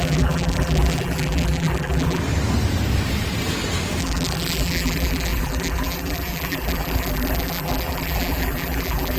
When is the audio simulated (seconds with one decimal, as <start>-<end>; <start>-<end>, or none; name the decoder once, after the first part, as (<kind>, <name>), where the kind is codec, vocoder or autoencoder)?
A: 0.0-2.2 (vocoder, BigVGAN v2); 4.0-9.2